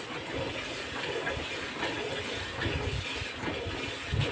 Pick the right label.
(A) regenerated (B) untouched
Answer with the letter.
B